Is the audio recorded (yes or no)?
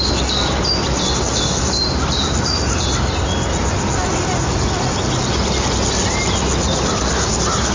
yes